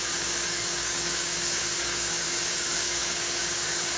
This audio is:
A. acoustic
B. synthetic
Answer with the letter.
B